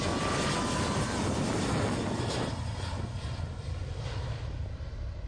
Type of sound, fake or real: real